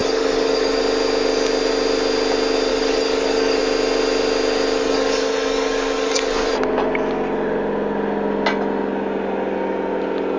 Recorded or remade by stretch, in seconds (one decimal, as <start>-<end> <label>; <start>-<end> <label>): 0.0-0.8 remade; 0.8-2.7 recorded; 2.7-3.6 remade; 3.6-4.8 recorded; 4.8-6.5 remade; 6.5-10.4 recorded